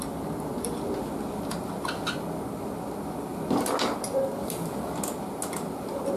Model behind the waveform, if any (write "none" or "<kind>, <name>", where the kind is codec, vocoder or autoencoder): none